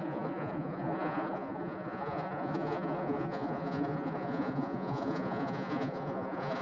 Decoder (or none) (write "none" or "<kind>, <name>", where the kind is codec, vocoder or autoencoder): vocoder, Vocos